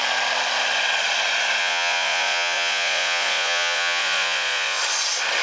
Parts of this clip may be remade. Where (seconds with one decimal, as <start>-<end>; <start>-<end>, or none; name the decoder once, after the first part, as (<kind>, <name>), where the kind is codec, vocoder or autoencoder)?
1.6-4.8 (vocoder, Vocos)